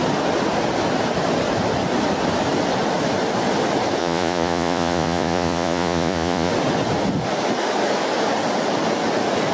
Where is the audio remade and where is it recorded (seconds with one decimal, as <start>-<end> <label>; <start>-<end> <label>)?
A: 0.0-4.0 recorded; 4.0-6.5 remade; 6.5-9.5 recorded